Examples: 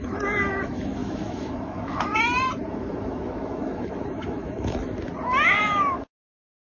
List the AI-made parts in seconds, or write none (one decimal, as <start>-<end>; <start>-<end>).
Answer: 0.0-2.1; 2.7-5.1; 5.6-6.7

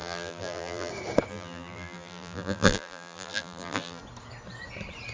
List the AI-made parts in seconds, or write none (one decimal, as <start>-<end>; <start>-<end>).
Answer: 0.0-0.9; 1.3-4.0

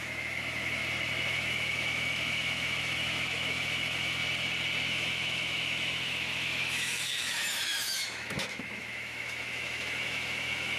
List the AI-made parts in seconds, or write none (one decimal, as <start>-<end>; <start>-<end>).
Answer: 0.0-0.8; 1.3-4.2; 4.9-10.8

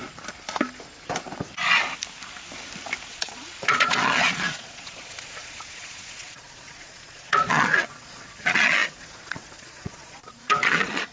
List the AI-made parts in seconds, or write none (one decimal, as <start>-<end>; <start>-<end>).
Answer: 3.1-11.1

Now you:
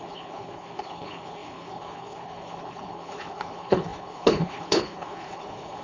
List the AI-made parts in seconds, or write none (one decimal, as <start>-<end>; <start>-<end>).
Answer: 0.0-5.8

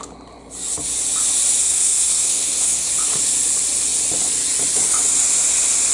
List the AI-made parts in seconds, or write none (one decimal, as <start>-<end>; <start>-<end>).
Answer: 1.6-2.9

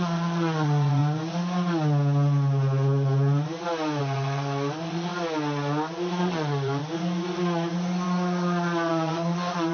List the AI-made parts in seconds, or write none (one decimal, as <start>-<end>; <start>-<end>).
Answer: 0.0-1.0; 4.0-5.1; 6.2-6.8; 8.9-9.7